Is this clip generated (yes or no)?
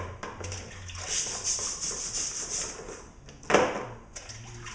no